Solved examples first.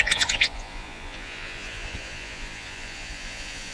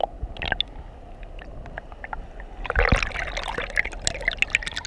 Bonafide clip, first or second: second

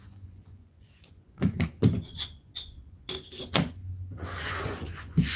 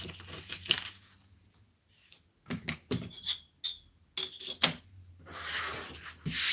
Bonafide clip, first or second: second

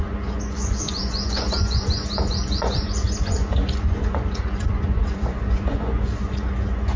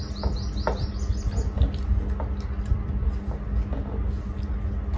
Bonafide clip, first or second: second